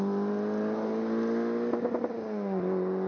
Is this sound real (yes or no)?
yes